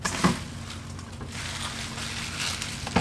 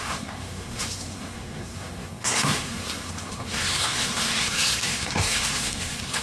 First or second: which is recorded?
first